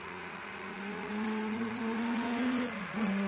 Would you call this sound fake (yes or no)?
yes